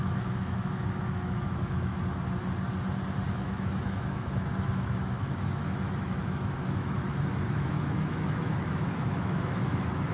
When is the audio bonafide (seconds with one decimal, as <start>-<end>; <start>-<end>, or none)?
1.9-3.3